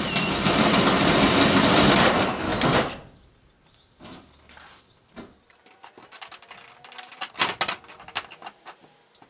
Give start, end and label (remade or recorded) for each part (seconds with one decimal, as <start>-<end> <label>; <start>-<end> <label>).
0.0-9.3 recorded